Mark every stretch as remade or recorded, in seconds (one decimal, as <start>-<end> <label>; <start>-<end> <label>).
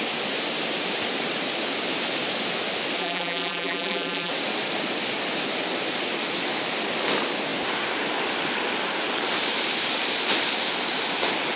0.0-3.0 recorded; 3.0-4.3 remade; 4.3-11.6 recorded